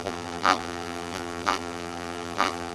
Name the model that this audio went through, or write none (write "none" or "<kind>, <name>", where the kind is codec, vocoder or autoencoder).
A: vocoder, BigVGAN v2